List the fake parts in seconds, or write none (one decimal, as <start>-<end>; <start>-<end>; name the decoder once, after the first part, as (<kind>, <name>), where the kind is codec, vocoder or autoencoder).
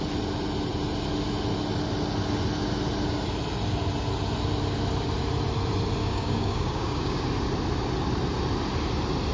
6.0-7.2 (codec, DAC)